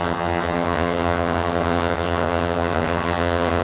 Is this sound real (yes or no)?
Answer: no